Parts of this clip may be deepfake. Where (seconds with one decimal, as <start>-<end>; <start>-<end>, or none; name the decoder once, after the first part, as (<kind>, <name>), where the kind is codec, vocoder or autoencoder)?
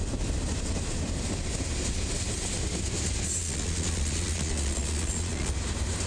3.4-5.5 (vocoder, Vocos)